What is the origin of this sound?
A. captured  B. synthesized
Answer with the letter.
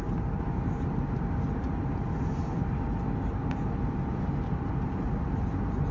B